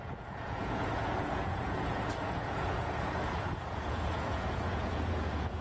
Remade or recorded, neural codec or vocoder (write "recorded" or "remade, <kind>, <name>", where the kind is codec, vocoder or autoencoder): remade, vocoder, Vocos